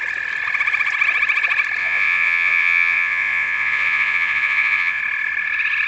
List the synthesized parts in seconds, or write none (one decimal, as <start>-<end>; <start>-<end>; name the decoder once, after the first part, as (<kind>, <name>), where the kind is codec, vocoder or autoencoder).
1.8-5.0 (vocoder, Vocos)